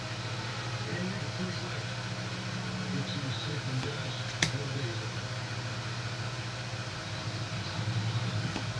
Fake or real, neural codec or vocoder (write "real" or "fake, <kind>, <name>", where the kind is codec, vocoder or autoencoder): real